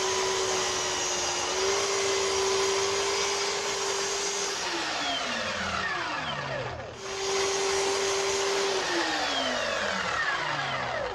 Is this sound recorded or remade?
recorded